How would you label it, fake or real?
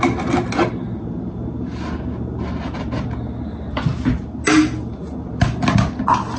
real